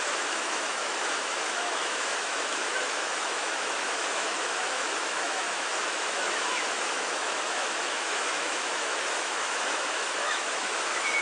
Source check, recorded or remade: remade